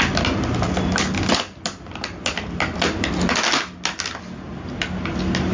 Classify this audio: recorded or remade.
recorded